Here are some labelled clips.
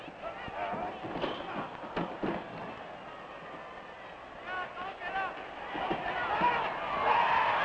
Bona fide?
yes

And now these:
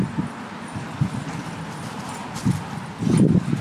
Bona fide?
yes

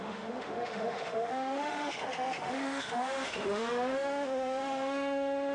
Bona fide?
no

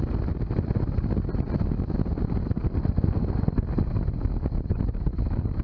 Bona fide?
yes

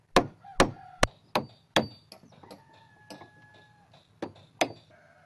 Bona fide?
yes